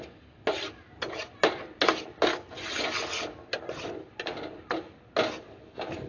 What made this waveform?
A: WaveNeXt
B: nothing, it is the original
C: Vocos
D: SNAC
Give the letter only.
B